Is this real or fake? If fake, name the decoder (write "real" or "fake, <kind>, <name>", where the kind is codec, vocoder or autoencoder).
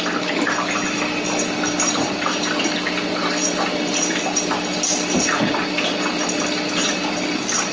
real